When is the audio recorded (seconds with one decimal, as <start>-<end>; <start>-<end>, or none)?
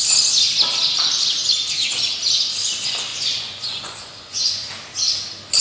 0.0-3.1; 4.7-5.6